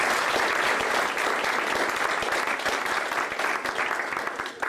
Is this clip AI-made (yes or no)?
no